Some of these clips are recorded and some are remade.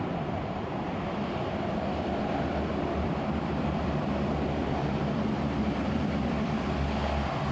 remade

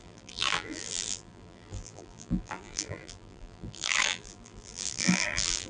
remade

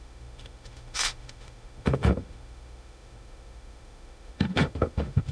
remade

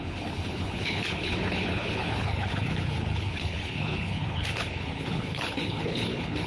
remade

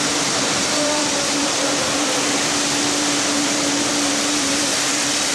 remade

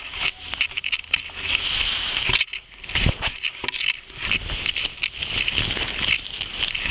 recorded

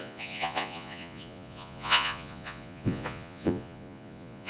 remade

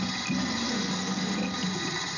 recorded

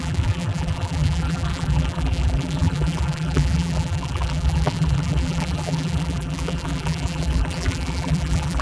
remade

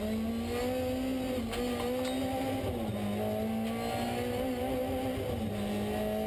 recorded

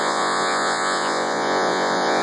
remade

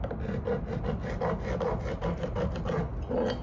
recorded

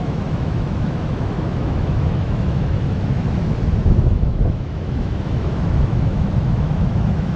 remade